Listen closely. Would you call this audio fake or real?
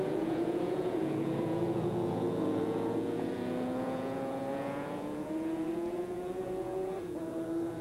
fake